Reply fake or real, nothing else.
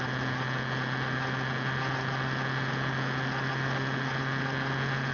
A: real